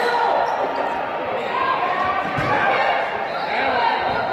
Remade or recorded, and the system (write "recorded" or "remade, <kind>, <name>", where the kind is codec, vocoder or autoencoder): recorded